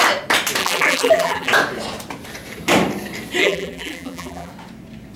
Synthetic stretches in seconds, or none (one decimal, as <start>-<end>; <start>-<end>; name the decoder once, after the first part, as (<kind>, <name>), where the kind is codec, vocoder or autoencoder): 0.6-1.5 (vocoder, BigVGAN v2); 3.4-4.5